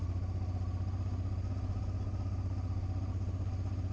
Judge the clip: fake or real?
real